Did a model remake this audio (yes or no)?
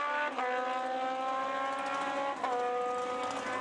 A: no